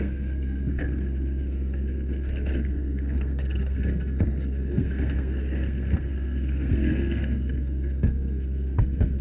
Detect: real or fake fake